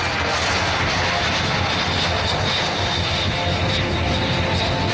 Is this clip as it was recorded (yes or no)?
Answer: yes